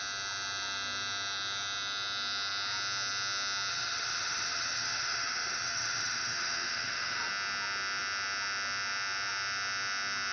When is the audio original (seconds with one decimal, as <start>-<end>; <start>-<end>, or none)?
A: 0.0-3.7; 7.3-10.3